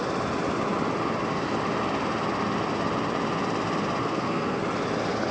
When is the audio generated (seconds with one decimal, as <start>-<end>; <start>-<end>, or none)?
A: 4.0-4.6